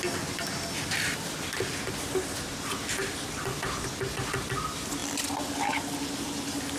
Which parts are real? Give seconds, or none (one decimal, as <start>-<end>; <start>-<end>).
0.0-6.8